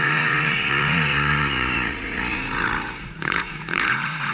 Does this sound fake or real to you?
fake